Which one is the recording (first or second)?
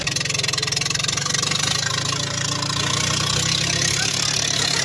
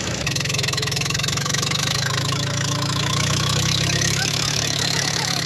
first